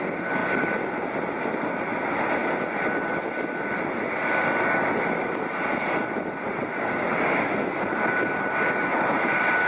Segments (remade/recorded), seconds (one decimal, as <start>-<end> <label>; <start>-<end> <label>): 0.0-9.7 recorded